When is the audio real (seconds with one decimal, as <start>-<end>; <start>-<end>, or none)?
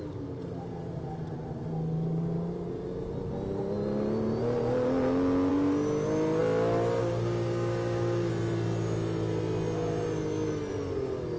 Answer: 0.0-7.0; 8.3-11.4